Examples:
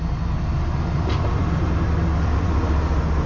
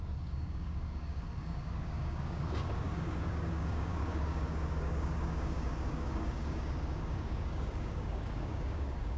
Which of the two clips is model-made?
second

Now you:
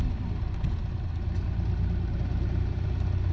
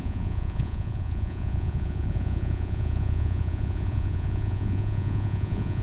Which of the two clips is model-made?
second